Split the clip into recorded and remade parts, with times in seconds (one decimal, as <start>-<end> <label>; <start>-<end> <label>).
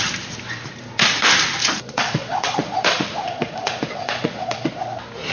0.0-1.6 recorded; 1.6-4.8 remade; 4.8-5.3 recorded